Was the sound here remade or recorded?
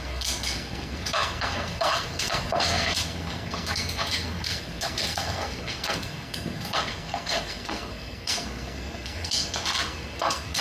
remade